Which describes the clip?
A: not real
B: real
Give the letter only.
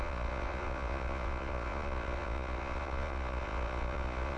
A